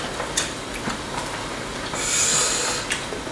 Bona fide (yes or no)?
yes